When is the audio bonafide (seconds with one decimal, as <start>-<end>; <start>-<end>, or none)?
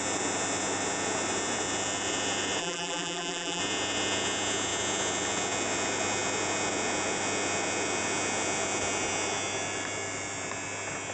0.0-2.6; 3.6-11.1